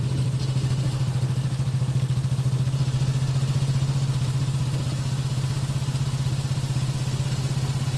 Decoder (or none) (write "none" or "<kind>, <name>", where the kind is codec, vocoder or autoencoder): none